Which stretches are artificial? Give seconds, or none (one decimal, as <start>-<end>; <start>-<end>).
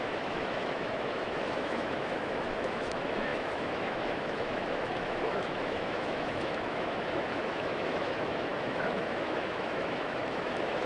0.0-10.9